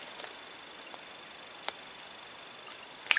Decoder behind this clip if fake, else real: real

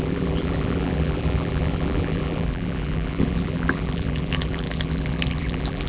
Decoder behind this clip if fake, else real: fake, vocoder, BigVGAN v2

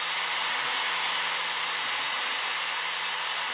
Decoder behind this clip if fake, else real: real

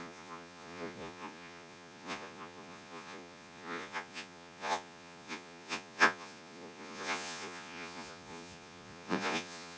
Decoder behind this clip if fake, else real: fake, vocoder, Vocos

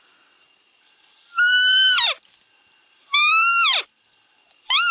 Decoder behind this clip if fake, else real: fake, vocoder, BigVGAN v2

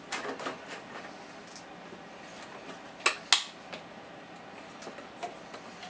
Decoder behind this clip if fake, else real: real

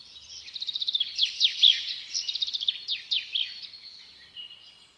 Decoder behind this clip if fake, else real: real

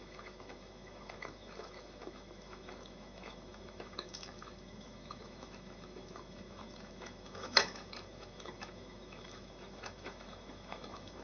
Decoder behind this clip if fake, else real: fake, autoencoder, DAC-VAE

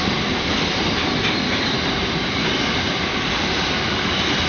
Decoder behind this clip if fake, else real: real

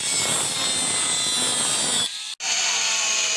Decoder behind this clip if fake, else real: real